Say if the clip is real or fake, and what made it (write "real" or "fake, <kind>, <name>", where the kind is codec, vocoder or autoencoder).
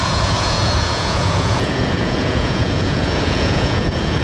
fake, vocoder, Vocos